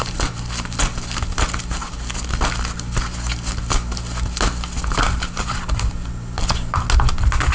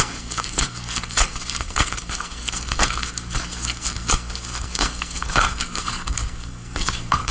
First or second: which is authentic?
first